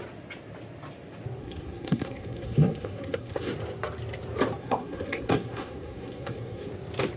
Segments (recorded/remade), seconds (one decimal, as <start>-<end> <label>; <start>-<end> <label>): 0.0-1.4 recorded; 1.4-3.5 remade; 3.5-4.6 recorded; 4.6-6.7 remade; 6.7-7.2 recorded